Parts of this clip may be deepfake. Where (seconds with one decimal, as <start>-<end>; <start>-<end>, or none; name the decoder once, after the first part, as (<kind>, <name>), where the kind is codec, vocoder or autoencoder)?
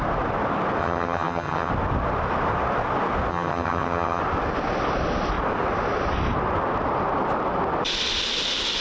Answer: 0.8-1.7 (vocoder, HiFi-GAN); 3.3-4.2